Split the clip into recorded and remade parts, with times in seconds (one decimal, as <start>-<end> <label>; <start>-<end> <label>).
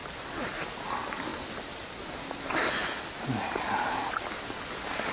0.0-0.9 remade; 0.9-5.1 recorded